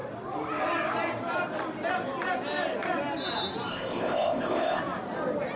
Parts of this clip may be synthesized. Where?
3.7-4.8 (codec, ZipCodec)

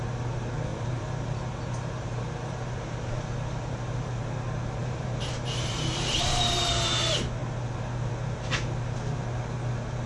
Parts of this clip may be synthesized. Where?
0.7-4.2 (vocoder, BigVGAN v2); 4.8-6.7